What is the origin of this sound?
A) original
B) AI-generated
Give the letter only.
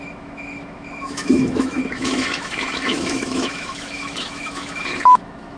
B